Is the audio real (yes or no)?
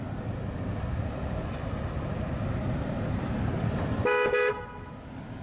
yes